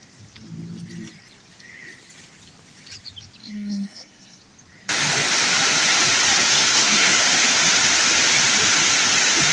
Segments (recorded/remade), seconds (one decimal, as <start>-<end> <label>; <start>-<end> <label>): 0.0-3.4 recorded; 3.4-4.4 remade; 4.4-6.5 recorded; 6.5-7.2 remade; 7.2-9.5 recorded